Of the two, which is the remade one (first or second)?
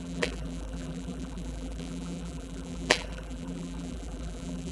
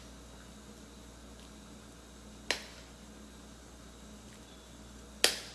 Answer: first